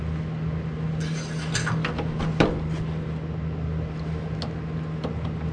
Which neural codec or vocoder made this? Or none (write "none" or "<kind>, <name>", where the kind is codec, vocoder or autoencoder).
none